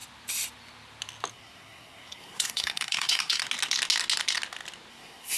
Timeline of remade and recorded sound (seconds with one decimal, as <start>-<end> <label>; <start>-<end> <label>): 0.0-1.3 recorded; 1.3-3.4 remade; 3.4-4.9 recorded; 4.9-5.4 remade